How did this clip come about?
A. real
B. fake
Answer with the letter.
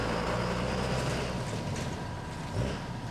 A